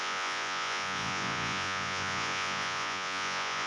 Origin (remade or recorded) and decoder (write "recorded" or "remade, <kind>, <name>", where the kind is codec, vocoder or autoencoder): remade, vocoder, Vocos